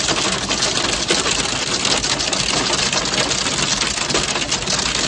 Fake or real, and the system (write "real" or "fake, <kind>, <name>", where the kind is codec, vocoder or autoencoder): real